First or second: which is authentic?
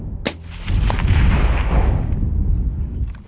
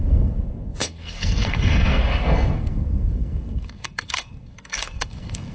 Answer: first